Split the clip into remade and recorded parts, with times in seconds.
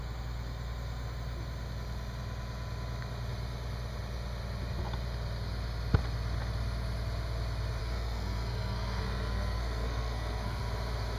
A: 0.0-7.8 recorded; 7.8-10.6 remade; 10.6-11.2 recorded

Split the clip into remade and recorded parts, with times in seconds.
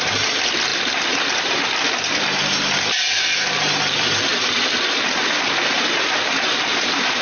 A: 0.0-4.3 recorded; 4.3-7.2 remade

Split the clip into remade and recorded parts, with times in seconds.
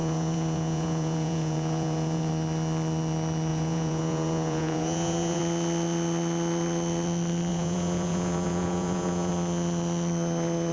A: 0.0-2.3 remade; 2.3-3.5 recorded; 3.5-5.4 remade; 5.4-7.5 recorded; 7.5-9.3 remade; 9.3-10.7 recorded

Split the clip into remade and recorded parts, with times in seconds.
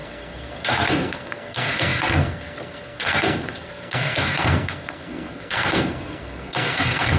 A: 0.0-7.2 remade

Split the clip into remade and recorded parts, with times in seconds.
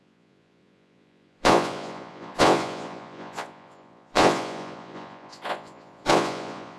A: 0.0-6.8 remade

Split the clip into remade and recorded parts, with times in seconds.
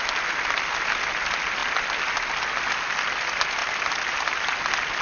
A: 0.0-5.0 recorded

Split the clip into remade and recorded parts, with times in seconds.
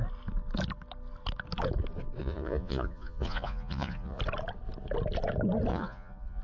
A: 0.0-2.2 recorded; 2.2-4.2 remade; 4.2-5.7 recorded; 5.7-6.4 remade